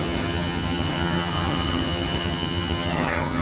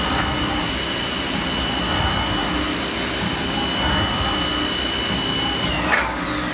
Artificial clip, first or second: first